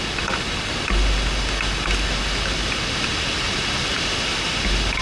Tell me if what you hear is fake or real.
real